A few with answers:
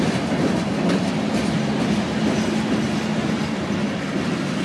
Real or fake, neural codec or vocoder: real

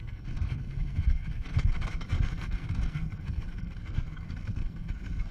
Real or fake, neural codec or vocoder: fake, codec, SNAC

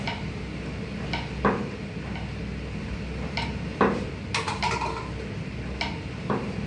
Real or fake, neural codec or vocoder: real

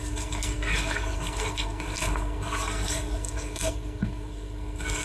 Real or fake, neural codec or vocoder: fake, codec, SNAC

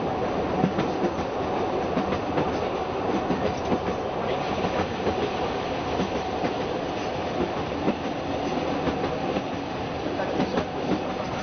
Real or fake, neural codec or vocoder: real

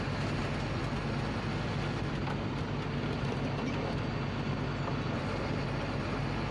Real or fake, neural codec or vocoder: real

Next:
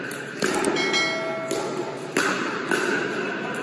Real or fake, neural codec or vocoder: real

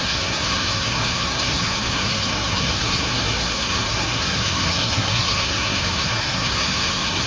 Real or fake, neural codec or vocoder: fake, codec, SNAC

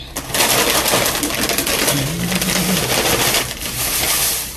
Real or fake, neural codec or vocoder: real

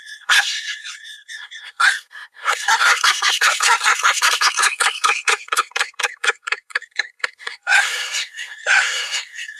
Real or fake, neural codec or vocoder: fake, codec, SNAC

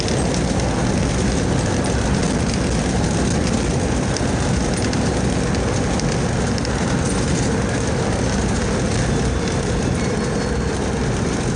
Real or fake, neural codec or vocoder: real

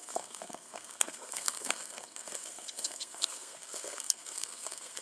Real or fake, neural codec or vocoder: fake, codec, SNAC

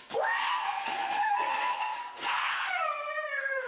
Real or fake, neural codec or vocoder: fake, codec, SNAC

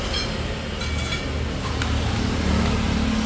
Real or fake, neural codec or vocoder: real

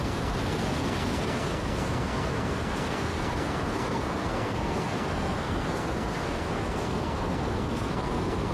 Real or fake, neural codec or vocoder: fake, codec, SNAC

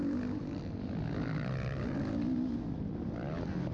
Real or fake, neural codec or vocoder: real